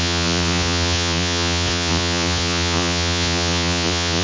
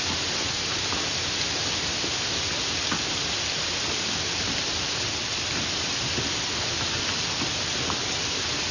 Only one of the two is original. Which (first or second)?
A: second